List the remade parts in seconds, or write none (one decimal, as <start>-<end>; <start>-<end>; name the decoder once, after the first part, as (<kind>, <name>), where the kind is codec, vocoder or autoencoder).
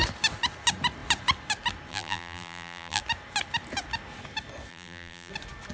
1.9-3.0 (vocoder, BigVGAN v2); 4.7-5.3